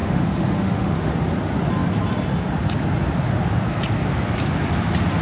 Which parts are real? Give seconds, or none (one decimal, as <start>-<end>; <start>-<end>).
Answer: 1.1-5.2